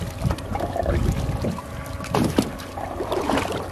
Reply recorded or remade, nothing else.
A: remade